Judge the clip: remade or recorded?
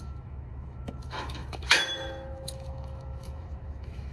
remade